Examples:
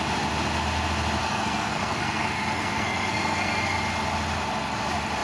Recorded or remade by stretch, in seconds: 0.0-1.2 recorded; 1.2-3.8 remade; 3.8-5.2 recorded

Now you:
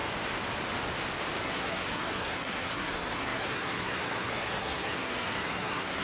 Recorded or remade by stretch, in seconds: 0.0-1.4 recorded; 1.4-6.0 remade

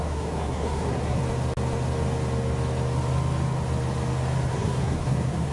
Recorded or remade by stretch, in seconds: 0.0-1.2 remade; 1.2-4.5 recorded; 4.5-5.5 remade

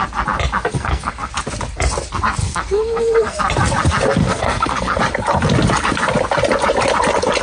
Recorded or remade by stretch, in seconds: 0.0-0.7 recorded; 0.7-1.3 remade; 1.3-2.4 recorded; 2.4-3.4 remade; 3.4-4.2 recorded; 4.2-5.0 remade; 5.0-7.4 recorded

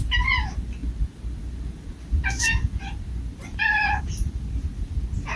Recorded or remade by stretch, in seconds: 0.0-5.4 recorded

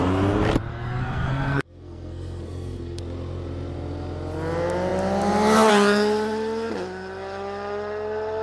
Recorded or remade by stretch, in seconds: 0.0-0.7 recorded; 0.7-3.0 remade; 3.0-8.4 recorded